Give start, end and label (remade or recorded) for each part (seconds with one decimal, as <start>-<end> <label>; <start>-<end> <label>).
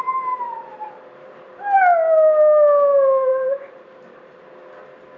0.0-1.6 remade; 1.6-3.3 recorded; 3.3-4.4 remade; 4.4-5.2 recorded